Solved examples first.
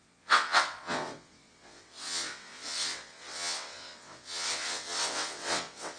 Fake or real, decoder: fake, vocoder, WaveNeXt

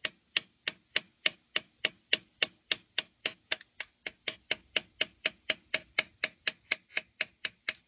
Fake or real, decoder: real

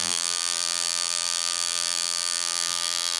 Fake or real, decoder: fake, vocoder, BigVGAN v2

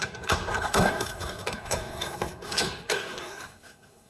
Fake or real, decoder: fake, codec, SNAC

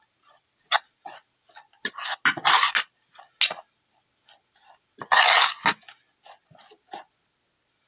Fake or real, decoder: real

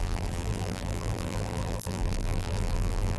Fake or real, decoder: fake, vocoder, BigVGAN v2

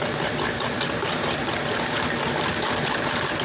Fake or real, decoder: real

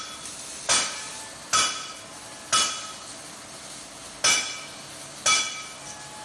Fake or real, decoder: real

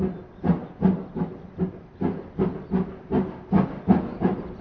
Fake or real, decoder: real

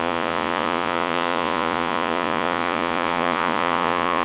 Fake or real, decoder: fake, vocoder, Vocos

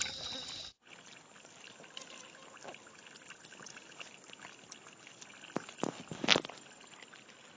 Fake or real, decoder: real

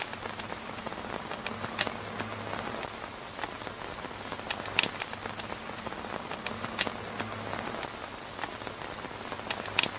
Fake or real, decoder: real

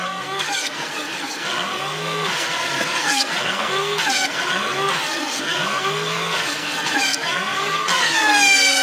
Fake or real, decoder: fake, codec, SNAC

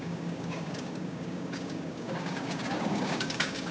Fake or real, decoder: fake, codec, DAC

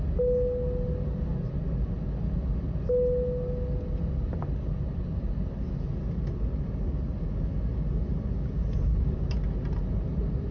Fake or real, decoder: real